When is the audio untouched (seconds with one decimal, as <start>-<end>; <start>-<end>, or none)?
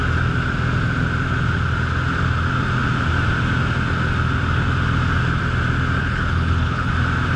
0.0-6.0; 6.9-7.4